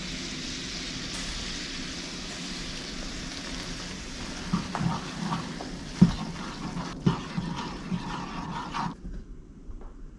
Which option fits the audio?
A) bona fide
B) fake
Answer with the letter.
A